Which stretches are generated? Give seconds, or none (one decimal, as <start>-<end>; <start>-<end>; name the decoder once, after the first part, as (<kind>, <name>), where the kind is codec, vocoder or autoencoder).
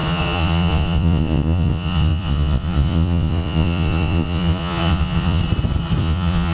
0.0-5.4 (vocoder, Vocos); 6.0-6.5